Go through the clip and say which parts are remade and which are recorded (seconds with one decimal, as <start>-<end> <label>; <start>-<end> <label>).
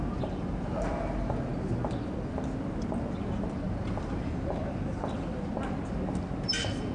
0.0-6.9 recorded